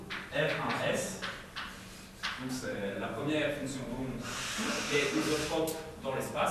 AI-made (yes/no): no